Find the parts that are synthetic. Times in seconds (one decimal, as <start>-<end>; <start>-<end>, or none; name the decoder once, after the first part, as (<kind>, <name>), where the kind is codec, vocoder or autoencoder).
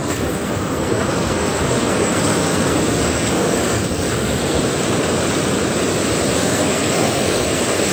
0.0-4.6 (codec, SNAC); 6.3-7.9